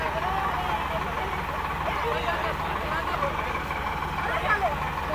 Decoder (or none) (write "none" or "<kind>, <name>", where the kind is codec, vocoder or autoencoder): none